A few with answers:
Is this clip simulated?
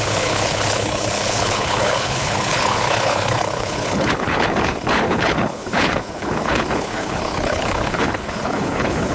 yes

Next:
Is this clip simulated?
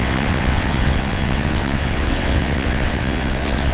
yes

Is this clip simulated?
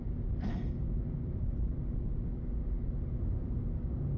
no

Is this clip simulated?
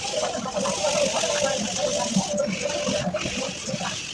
no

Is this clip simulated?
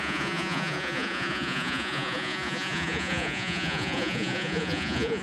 yes